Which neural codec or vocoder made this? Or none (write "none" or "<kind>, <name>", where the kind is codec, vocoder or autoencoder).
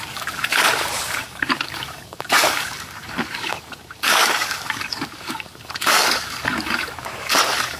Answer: codec, DAC